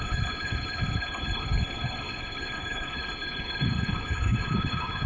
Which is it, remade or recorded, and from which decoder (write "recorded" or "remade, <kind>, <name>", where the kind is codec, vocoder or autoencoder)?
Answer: remade, codec, HILCodec